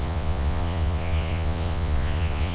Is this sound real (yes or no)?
no